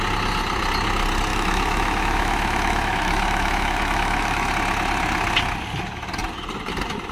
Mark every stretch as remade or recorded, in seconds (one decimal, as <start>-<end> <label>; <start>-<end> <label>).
0.0-1.3 recorded; 1.3-4.5 remade; 4.5-7.1 recorded